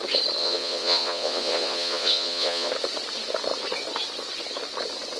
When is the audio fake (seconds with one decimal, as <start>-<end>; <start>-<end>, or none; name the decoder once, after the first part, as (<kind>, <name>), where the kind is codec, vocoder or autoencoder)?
0.4-2.7 (vocoder, Vocos)